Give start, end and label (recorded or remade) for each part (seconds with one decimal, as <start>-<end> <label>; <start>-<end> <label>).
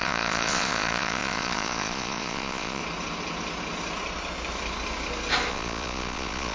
0.0-2.8 remade; 2.8-5.5 recorded; 5.5-6.5 remade